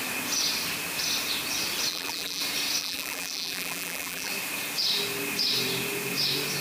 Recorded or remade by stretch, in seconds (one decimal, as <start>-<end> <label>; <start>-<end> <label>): 0.0-1.9 recorded; 1.9-2.4 remade; 2.4-2.8 recorded; 2.8-4.3 remade; 4.3-6.6 recorded